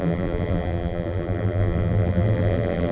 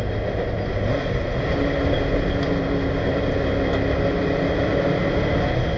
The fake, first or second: first